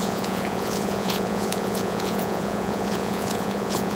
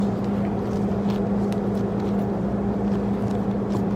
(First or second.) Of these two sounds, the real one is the second